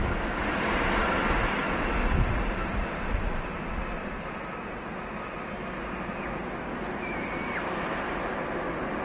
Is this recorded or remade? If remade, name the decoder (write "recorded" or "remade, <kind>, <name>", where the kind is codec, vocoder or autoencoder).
recorded